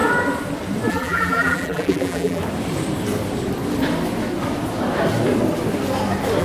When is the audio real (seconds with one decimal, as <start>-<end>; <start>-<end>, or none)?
0.0-0.9; 2.4-6.4